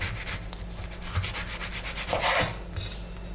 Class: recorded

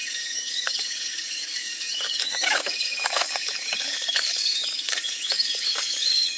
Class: remade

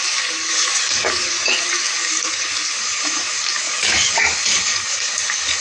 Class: remade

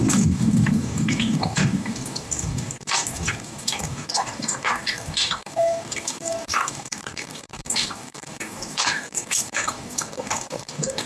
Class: remade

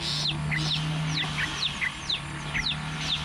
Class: recorded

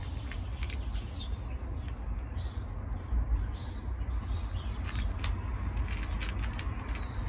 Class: recorded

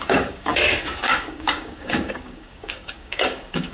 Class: remade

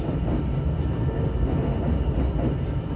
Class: recorded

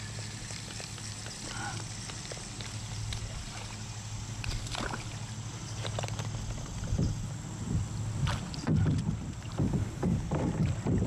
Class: recorded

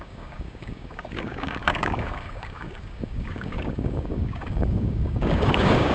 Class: remade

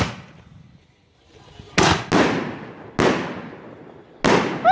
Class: recorded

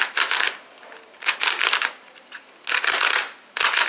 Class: recorded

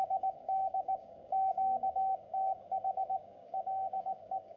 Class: remade